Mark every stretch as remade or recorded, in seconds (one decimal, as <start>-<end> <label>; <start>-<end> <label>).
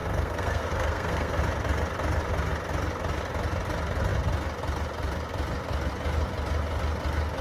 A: 0.0-1.4 remade; 1.4-7.4 recorded